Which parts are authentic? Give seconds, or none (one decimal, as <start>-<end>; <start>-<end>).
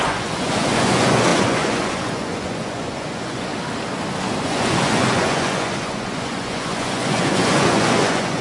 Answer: 3.5-4.4